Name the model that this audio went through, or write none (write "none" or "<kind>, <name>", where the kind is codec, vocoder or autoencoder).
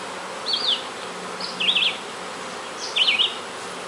none